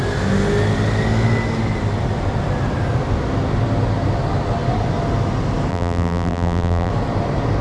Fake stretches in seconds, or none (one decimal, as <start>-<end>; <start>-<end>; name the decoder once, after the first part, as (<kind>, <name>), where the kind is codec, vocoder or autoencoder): 5.7-6.9 (vocoder, BigVGAN v2)